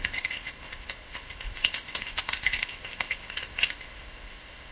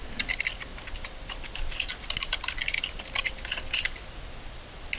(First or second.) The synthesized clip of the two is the first